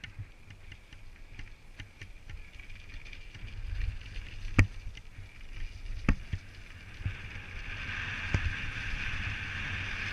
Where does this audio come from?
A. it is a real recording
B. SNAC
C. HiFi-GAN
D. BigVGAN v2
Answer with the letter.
A